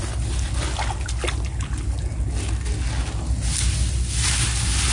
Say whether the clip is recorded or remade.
recorded